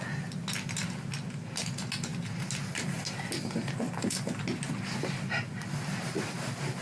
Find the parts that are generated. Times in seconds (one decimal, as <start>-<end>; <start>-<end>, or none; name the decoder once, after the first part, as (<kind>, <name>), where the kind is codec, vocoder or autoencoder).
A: none